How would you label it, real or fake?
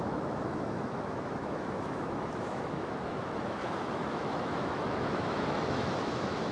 fake